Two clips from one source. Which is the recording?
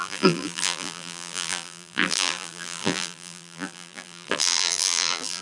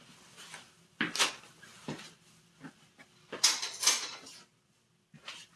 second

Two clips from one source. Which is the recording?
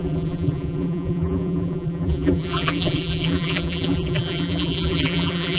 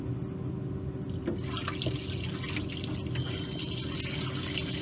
second